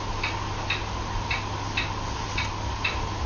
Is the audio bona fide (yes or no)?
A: yes